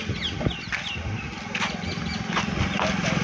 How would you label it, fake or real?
real